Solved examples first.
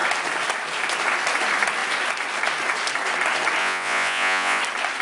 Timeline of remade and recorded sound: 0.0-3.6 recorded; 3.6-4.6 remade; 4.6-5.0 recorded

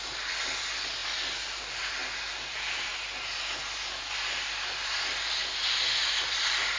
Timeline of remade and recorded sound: 0.0-6.8 recorded

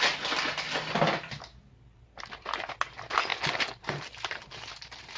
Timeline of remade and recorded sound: 0.0-5.2 recorded

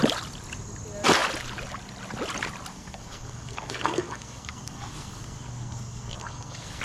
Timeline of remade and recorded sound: 0.0-2.7 recorded; 2.7-6.8 remade

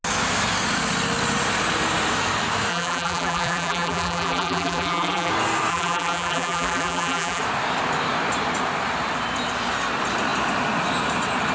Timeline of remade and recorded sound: 0.0-2.7 recorded; 2.7-5.3 remade; 5.3-5.7 recorded; 5.7-7.4 remade; 7.4-11.5 recorded

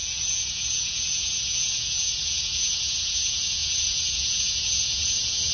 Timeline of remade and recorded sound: 0.0-5.5 remade

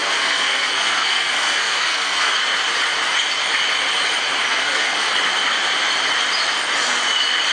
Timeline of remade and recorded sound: 0.0-2.3 remade; 2.3-4.5 recorded; 4.5-5.1 remade; 5.1-7.5 recorded

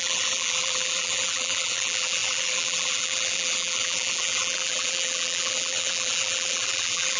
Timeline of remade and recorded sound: 0.0-7.2 remade